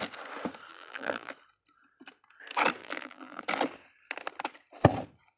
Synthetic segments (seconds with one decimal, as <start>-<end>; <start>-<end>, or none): 0.7-1.3; 2.8-3.4